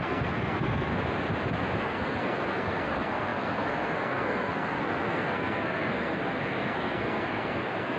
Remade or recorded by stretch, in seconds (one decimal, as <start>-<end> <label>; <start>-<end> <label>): 0.0-0.9 remade; 0.9-1.8 recorded; 1.8-8.0 remade